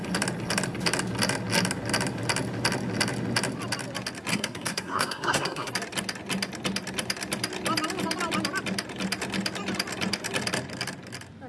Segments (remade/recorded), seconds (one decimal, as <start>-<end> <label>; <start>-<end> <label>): 0.0-4.3 recorded; 4.3-5.7 remade; 5.7-11.5 recorded